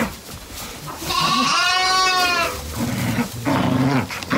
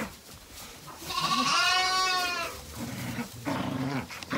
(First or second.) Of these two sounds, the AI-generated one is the second